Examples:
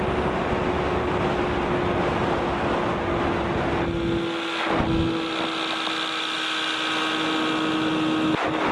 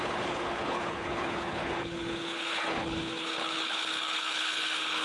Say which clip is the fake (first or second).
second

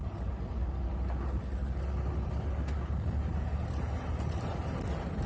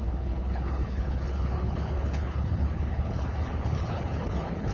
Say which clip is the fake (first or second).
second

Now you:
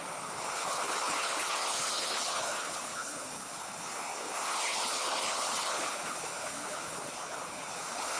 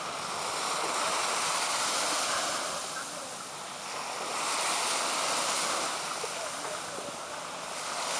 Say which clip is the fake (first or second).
first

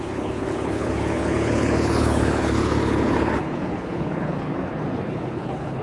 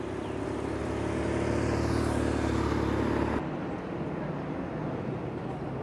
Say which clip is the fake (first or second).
first